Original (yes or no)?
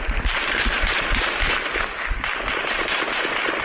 yes